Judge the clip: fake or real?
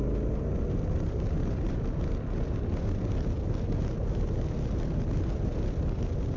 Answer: real